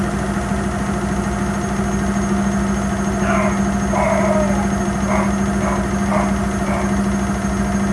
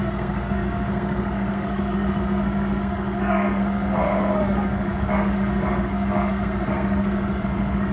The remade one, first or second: second